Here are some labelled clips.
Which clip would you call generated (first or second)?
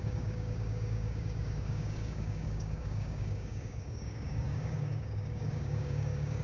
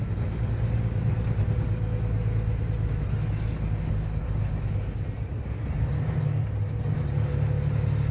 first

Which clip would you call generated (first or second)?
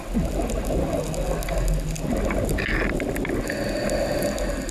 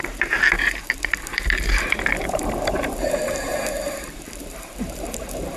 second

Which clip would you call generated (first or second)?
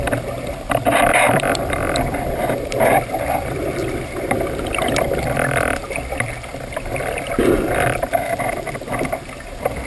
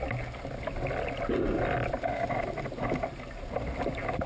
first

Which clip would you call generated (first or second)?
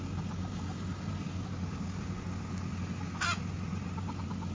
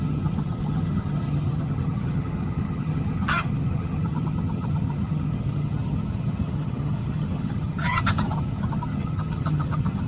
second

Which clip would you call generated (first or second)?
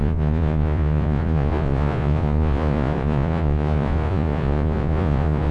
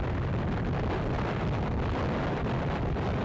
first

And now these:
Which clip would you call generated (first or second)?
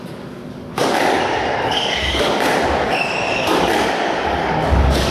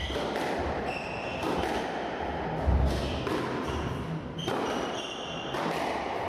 first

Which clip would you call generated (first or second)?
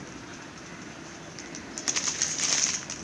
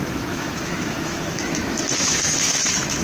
second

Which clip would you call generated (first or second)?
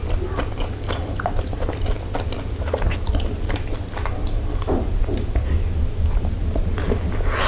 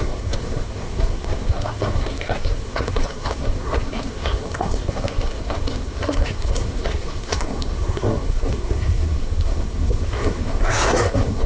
second